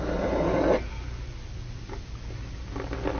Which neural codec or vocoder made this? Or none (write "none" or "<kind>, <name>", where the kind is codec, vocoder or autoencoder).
none